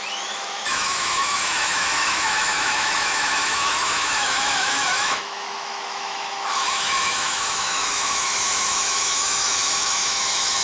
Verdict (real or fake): fake